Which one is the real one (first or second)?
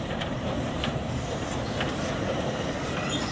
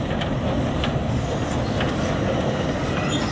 second